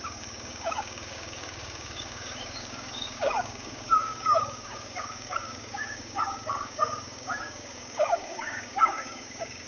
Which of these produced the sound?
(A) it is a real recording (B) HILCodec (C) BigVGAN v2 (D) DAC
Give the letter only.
D